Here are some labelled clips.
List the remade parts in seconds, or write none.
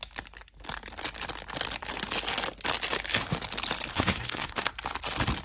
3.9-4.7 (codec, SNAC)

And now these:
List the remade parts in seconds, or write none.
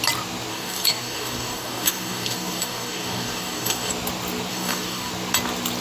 0.5-3.9 (codec, DAC); 4.5-5.1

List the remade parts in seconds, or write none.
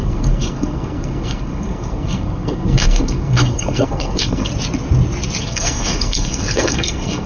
0.0-4.5 (codec, SNAC); 5.4-7.3